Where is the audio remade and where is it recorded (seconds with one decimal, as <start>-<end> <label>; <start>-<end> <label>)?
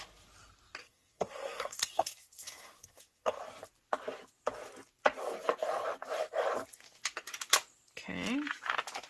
0.0-0.8 recorded; 0.8-3.4 remade; 3.4-9.1 recorded